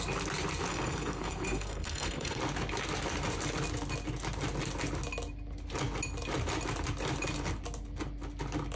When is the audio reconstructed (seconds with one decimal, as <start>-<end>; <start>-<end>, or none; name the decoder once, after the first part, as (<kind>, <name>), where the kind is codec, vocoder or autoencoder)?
0.7-2.4 (codec, SNAC)